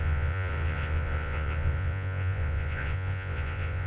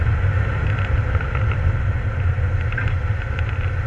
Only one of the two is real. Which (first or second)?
second